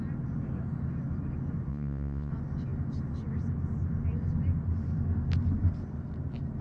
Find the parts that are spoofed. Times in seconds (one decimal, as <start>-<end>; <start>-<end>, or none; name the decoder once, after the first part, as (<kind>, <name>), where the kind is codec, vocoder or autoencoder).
1.7-2.3 (vocoder, Vocos)